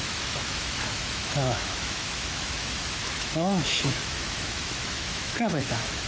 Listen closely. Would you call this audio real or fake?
fake